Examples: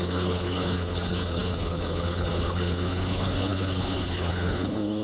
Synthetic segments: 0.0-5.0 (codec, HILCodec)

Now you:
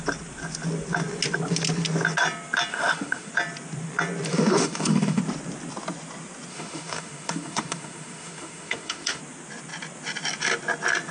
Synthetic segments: 2.7-3.3 (autoencoder, DAC-VAE); 4.3-5.2; 6.5-9.2

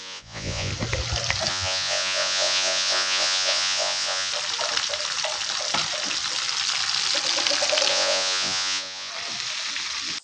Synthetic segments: 0.0-0.7 (vocoder, Vocos); 1.5-4.3; 7.9-9.1

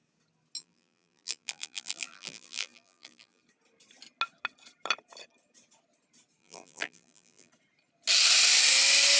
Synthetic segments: 0.6-3.4 (vocoder, BigVGAN v2); 6.4-7.5

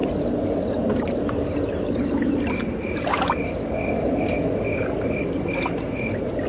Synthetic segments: 0.0-0.7 (vocoder, BigVGAN v2)

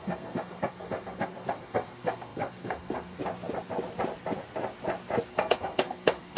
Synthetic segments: 0.0-3.2 (codec, SNAC); 5.3-6.4